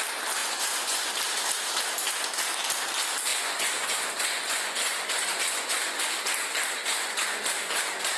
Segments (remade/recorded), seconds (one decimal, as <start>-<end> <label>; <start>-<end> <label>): 0.0-0.4 recorded; 0.4-1.1 remade; 1.1-3.3 recorded; 3.3-6.0 remade; 6.0-6.8 recorded; 6.8-7.4 remade; 7.4-8.2 recorded